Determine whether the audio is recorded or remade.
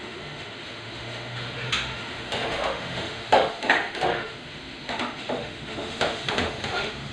remade